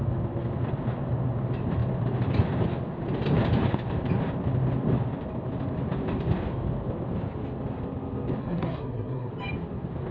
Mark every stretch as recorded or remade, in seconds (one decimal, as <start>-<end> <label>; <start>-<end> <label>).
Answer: 0.0-8.4 recorded; 8.4-9.3 remade; 9.3-10.1 recorded